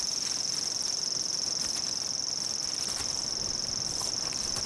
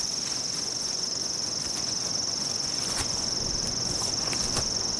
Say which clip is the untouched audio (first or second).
first